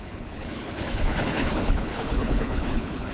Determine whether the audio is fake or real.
fake